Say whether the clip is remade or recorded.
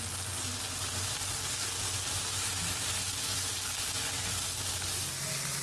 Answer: recorded